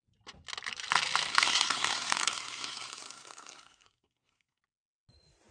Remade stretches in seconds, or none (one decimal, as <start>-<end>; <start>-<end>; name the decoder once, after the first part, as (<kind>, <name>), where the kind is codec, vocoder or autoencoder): 1.3-4.6 (codec, SNAC)